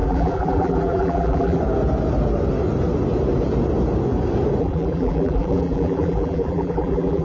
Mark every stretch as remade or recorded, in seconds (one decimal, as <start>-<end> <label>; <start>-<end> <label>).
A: 0.0-1.6 remade; 1.6-4.6 recorded; 4.6-7.2 remade